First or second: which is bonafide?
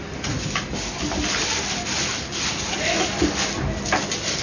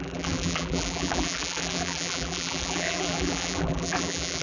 first